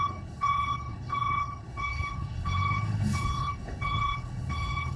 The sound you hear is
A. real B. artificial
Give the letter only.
B